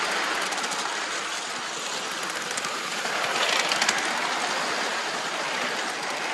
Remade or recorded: recorded